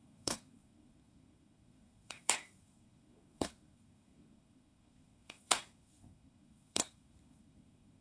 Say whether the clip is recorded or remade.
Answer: remade